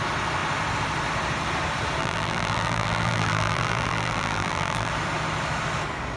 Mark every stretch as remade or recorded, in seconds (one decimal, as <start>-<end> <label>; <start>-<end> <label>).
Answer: 0.0-2.0 recorded; 2.0-4.9 remade; 4.9-6.2 recorded

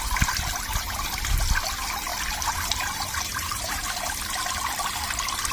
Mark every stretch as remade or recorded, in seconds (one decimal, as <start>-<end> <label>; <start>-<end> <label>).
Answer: 0.0-2.1 recorded; 2.1-4.0 remade; 4.0-5.5 recorded

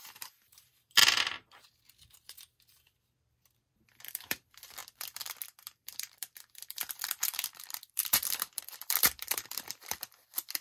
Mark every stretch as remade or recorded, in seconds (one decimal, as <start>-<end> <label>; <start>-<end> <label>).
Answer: 0.0-1.0 remade; 1.0-1.8 recorded; 1.8-10.6 remade

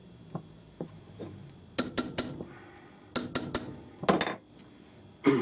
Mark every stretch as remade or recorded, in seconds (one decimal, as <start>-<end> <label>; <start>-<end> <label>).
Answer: 0.0-1.4 remade; 1.4-4.6 recorded; 4.6-5.4 remade

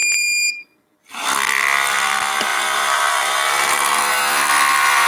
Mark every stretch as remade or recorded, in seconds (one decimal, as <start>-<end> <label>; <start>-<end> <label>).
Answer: 0.0-0.5 remade; 0.5-2.5 recorded; 2.5-4.0 remade; 4.0-5.1 recorded

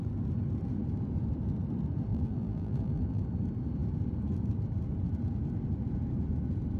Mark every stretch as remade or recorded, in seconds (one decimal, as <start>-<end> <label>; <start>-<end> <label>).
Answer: 0.0-2.1 recorded; 2.1-3.2 remade; 3.2-6.8 recorded

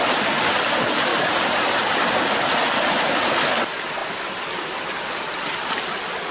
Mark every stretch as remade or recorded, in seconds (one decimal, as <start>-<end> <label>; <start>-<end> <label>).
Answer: 0.0-1.1 recorded; 1.1-2.1 remade; 2.1-6.3 recorded

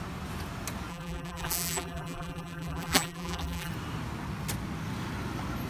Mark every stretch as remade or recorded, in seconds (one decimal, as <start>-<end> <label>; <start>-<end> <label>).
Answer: 0.0-0.9 recorded; 0.9-3.7 remade; 3.7-5.7 recorded